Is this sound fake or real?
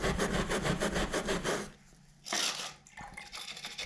real